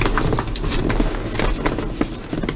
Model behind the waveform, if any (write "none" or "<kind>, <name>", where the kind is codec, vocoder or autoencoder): none